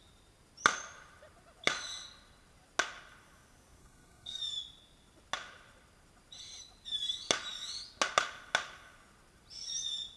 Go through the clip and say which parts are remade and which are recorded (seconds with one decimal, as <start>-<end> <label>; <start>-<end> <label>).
0.0-3.8 recorded; 3.8-4.4 remade; 4.4-10.2 recorded